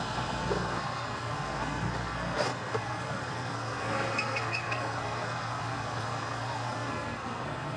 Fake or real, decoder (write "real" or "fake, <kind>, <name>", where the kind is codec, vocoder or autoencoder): fake, codec, SNAC